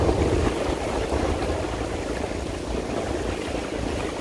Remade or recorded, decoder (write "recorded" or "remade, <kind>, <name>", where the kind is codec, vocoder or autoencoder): recorded